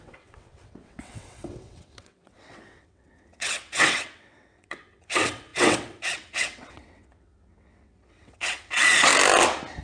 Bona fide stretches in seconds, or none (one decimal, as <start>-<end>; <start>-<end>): 9.1-9.8